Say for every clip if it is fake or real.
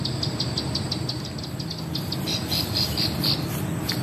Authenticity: real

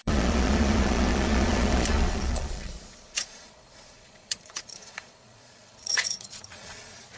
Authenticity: fake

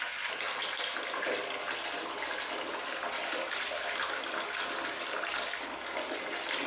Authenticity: real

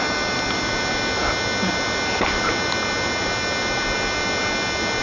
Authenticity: real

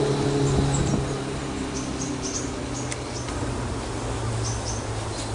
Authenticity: real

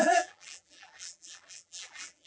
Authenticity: fake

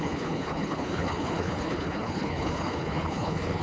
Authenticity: fake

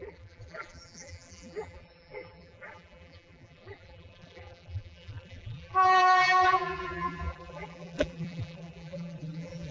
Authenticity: fake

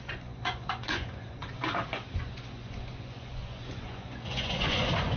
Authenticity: fake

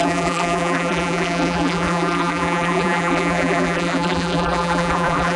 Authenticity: fake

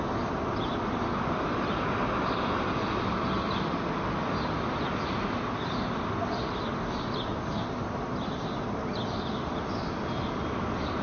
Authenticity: real